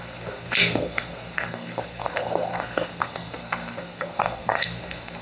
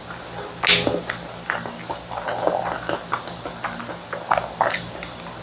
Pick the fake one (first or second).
first